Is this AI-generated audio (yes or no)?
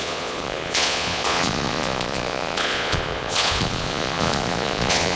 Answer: yes